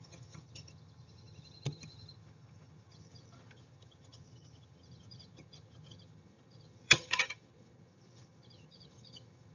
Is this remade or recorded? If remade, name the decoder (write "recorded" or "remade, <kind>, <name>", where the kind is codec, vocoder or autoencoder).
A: remade, vocoder, HiFi-GAN